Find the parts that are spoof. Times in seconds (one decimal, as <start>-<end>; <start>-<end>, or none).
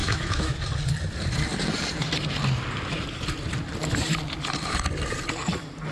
0.0-0.6